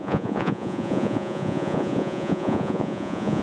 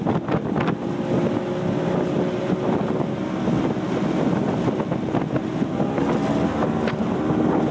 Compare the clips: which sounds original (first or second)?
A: second